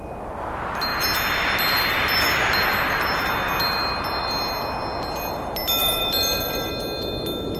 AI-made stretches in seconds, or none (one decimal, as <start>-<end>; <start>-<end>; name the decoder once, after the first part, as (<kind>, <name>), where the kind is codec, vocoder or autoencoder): 5.8-6.7 (vocoder, BigVGAN v2)